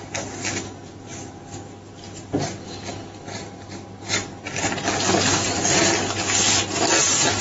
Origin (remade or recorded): recorded